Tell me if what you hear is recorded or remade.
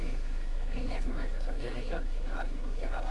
remade